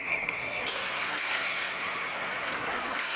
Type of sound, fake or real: fake